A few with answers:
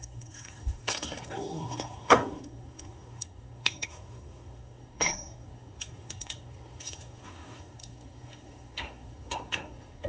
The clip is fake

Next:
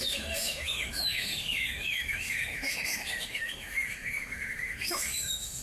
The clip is fake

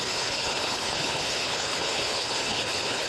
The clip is fake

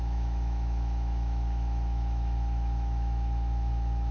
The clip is fake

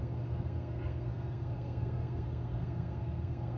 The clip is fake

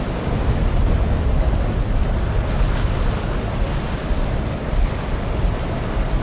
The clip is real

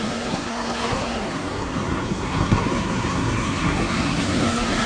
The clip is fake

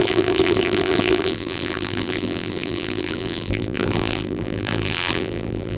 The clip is fake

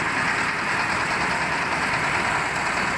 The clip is real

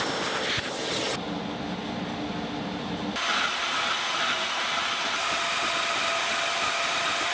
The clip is real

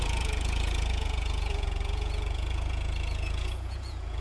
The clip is fake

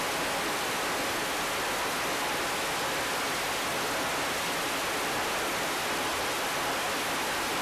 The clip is real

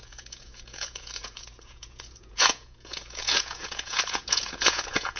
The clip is fake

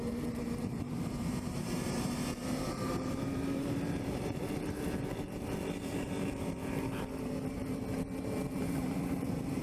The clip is fake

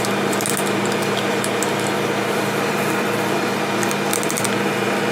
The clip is real